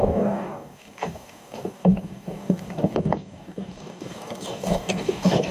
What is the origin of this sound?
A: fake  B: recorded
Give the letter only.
A